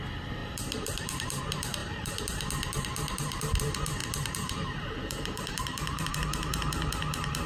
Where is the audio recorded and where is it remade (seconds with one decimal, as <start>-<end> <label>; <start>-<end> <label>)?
0.0-0.4 recorded; 0.4-1.4 remade; 1.4-1.8 recorded; 1.8-3.6 remade; 3.6-4.0 recorded; 4.0-6.1 remade; 6.1-7.5 recorded